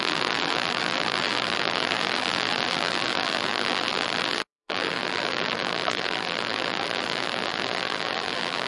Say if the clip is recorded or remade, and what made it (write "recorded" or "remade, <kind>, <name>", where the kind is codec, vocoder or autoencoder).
remade, vocoder, BigVGAN v2